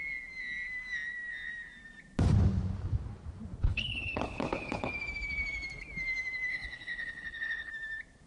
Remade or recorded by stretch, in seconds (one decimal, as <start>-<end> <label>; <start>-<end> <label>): 0.0-3.7 recorded; 3.7-4.9 remade; 4.9-6.5 recorded; 6.5-7.7 remade; 7.7-8.3 recorded